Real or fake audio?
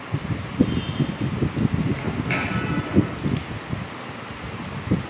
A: real